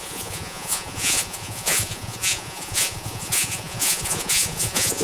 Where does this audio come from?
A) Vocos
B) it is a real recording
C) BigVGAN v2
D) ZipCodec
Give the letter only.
A